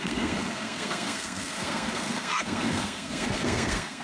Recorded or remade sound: remade